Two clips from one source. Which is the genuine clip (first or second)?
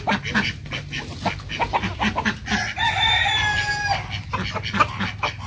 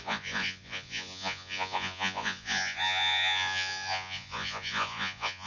first